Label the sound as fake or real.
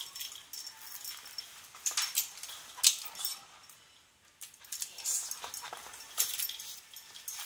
real